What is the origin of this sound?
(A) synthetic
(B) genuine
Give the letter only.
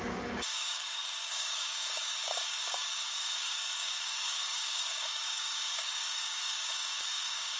A